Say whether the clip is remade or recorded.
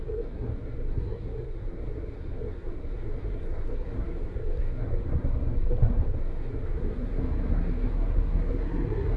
remade